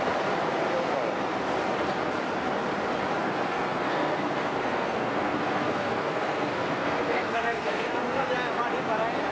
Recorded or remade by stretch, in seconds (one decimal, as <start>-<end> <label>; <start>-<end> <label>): 0.0-3.2 recorded; 3.2-8.3 remade; 8.3-9.3 recorded